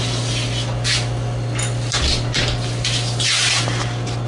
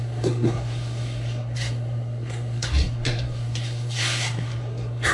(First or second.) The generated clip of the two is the second